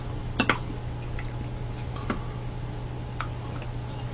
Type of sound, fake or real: real